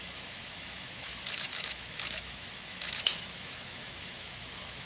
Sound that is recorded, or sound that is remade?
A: remade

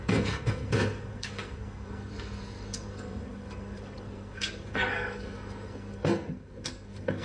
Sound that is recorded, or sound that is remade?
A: remade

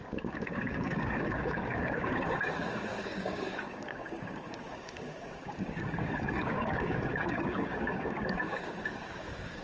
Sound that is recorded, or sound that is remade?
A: remade